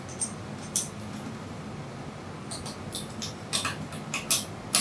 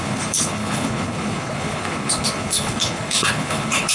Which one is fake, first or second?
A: second